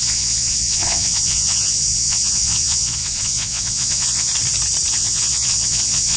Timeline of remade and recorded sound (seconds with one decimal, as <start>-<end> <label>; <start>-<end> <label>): 0.0-4.3 remade; 4.3-4.9 recorded; 4.9-6.2 remade